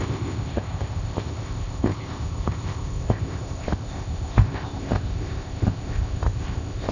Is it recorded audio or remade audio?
remade